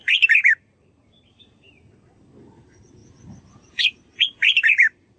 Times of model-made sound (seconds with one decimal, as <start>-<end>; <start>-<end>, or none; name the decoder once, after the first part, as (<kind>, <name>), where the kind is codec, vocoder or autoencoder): 0.0-1.7 (vocoder, BigVGAN v2); 3.0-5.2